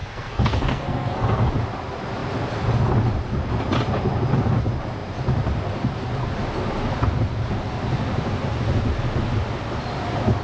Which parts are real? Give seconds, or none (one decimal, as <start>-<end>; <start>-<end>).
1.5-10.4